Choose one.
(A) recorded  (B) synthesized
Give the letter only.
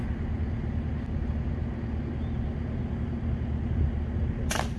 A